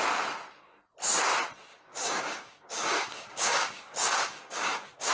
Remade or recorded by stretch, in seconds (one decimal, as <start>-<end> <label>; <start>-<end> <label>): 0.0-1.7 recorded; 1.7-5.1 remade